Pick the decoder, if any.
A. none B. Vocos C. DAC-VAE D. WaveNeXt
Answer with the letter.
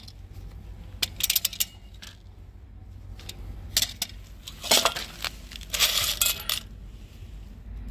A